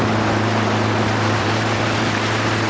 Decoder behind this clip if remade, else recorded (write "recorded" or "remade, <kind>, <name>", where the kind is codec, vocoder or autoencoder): remade, vocoder, BigVGAN v2